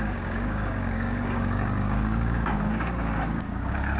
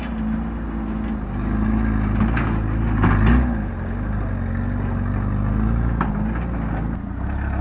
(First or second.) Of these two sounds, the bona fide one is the second